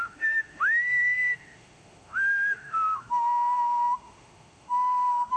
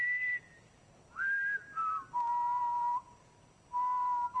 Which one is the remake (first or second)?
first